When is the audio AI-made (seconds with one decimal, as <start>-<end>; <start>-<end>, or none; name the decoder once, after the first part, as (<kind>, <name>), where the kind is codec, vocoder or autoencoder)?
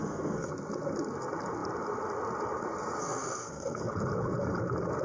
0.0-0.5 (codec, SNAC); 3.0-3.9